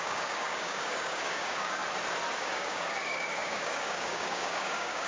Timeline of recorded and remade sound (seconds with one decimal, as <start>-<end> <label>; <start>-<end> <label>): 0.0-1.8 remade; 1.8-2.4 recorded; 2.4-5.1 remade